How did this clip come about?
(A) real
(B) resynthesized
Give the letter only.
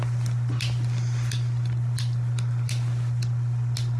A